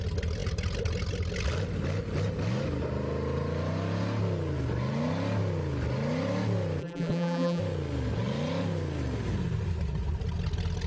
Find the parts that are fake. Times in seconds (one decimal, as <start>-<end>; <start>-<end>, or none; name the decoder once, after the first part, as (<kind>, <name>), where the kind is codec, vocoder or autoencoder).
6.8-7.6 (vocoder, BigVGAN v2)